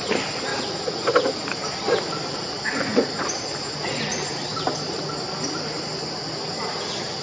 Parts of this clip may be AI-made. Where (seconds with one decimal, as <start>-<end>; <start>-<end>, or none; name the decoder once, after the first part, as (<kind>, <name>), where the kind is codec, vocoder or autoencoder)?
0.0-0.5 (vocoder, BigVGAN v2); 2.0-2.9; 3.9-4.5